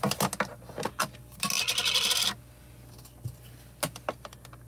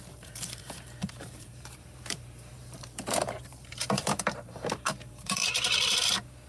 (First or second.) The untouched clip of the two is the first